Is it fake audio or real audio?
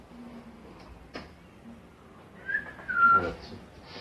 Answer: real